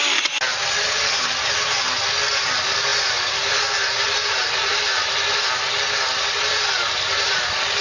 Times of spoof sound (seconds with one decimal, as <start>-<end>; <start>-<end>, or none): none